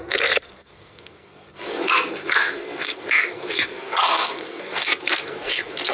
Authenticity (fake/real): fake